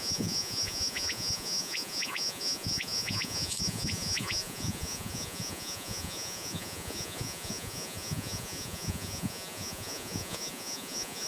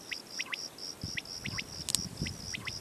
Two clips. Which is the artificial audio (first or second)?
first